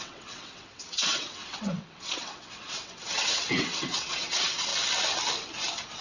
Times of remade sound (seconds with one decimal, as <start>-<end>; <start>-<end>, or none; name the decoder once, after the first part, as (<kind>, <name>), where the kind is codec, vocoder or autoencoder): 0.0-4.7 (vocoder, WaveNeXt)